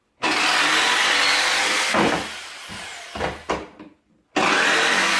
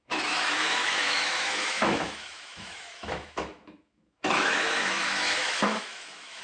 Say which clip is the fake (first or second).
second